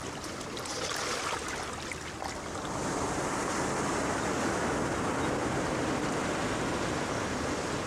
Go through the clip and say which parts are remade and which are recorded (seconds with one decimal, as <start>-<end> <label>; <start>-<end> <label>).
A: 0.0-0.7 remade; 0.7-7.9 recorded